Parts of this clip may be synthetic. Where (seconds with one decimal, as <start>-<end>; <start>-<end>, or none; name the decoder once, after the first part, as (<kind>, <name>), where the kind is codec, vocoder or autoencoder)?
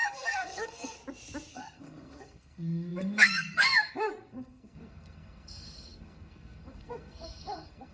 0.0-1.0 (codec, SNAC); 1.5-7.9